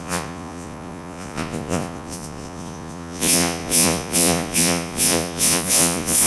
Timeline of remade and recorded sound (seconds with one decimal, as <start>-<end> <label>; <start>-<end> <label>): 0.0-6.3 remade